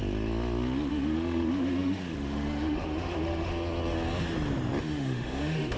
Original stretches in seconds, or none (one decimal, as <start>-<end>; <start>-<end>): 0.0-0.9; 3.5-4.8